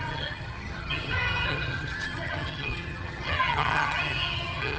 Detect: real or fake fake